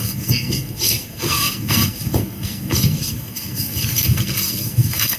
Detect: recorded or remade remade